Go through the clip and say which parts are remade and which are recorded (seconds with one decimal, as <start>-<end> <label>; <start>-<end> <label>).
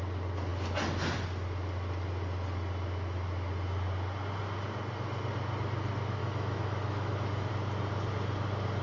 0.0-6.2 recorded; 6.2-7.5 remade; 7.5-8.8 recorded